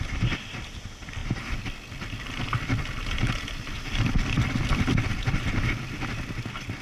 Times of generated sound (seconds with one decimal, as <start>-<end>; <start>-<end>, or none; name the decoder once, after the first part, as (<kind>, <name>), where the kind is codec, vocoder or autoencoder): none